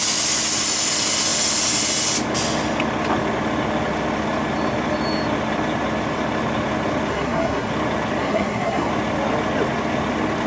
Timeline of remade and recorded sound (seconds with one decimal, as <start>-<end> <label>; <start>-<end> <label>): 0.0-7.1 recorded; 7.1-7.7 remade; 7.7-8.2 recorded; 8.2-8.9 remade; 8.9-10.5 recorded